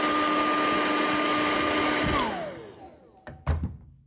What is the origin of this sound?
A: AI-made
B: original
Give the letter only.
B